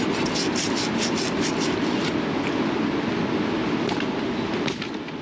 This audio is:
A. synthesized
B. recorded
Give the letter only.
B